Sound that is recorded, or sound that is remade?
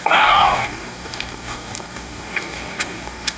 remade